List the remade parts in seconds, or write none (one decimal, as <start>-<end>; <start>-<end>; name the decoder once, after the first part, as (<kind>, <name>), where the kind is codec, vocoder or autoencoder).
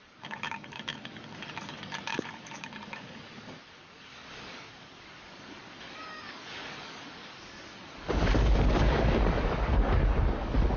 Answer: 0.0-10.8 (codec, DAC)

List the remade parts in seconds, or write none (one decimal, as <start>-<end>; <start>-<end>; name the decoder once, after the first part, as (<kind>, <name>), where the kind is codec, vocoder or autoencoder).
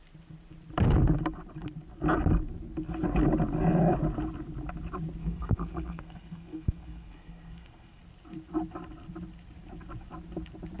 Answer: 5.2-8.0 (codec, SNAC)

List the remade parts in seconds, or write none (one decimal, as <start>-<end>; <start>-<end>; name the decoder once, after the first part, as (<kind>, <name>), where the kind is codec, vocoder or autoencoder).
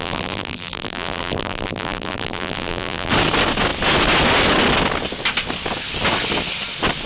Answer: 0.0-3.1 (vocoder, BigVGAN v2)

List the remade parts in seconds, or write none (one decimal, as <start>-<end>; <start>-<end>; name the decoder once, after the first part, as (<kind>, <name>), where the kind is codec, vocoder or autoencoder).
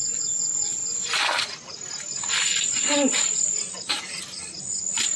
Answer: none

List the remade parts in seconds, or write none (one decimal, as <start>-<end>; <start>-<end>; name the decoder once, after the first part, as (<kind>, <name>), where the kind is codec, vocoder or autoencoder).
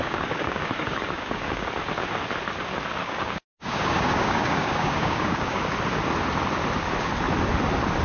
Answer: 0.0-1.7 (codec, DAC); 3.0-5.6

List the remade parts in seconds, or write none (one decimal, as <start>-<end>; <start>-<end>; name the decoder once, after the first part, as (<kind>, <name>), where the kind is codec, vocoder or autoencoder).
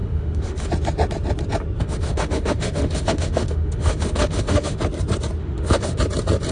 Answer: 0.0-0.7 (autoencoder, DAC-VAE); 1.8-4.8; 5.4-6.0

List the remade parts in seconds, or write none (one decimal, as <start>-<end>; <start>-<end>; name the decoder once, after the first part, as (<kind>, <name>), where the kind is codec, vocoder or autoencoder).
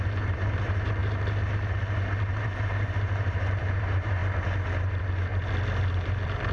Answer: 0.0-4.2 (vocoder, BigVGAN v2); 4.8-5.3; 5.8-6.5